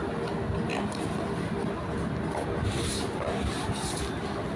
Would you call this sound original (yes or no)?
yes